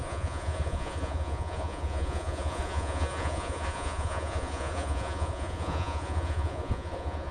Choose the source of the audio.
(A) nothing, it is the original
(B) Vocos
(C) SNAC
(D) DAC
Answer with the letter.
B